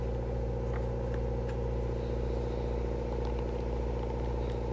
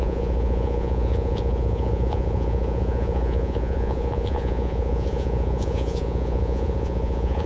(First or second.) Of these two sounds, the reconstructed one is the second